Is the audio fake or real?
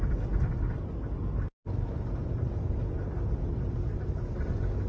real